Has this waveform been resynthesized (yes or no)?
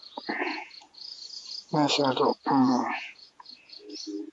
yes